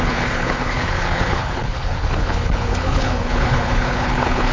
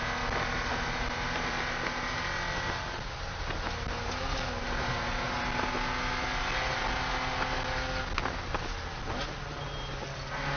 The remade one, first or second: first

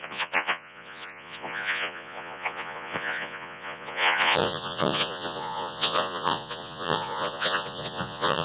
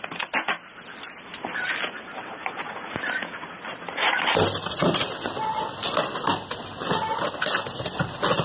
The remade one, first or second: first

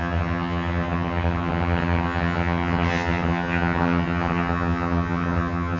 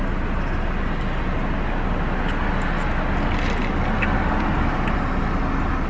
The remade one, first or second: first